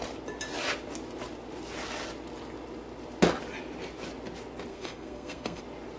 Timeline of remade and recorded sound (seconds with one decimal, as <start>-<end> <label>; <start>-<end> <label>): 0.0-4.7 recorded; 4.7-5.6 remade; 5.6-6.0 recorded